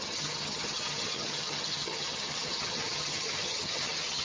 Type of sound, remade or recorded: remade